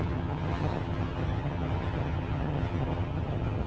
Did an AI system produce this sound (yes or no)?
yes